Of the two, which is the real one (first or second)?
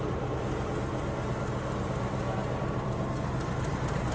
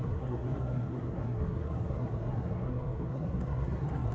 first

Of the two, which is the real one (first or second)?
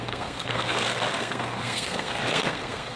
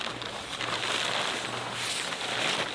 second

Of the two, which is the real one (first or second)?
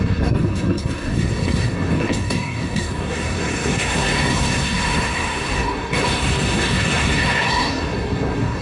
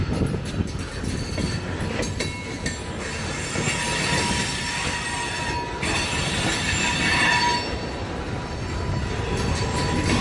second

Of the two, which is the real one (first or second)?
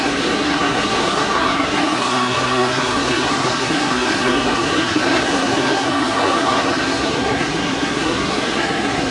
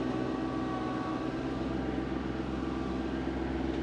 second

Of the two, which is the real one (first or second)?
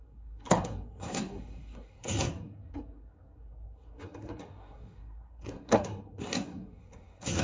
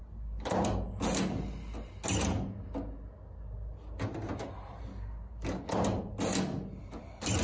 second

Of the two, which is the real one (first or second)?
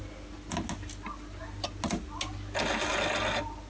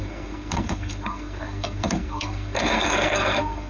first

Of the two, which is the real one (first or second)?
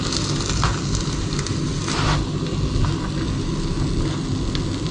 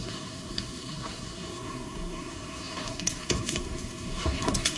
first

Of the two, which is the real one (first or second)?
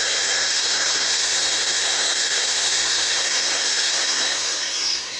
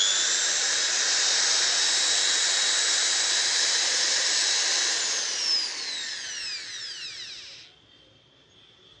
second